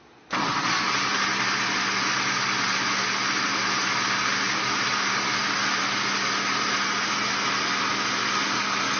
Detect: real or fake real